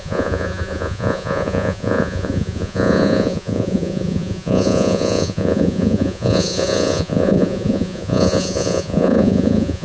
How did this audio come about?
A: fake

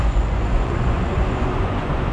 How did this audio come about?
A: fake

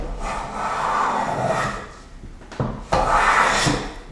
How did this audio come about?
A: real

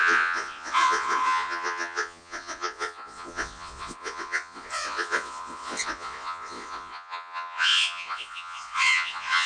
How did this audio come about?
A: fake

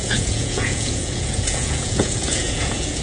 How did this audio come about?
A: fake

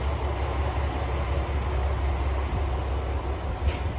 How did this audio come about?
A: real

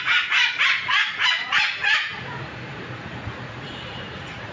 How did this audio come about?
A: fake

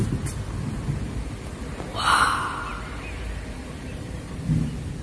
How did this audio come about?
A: real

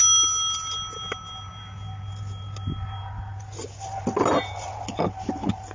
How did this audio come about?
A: real